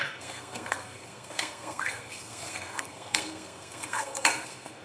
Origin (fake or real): fake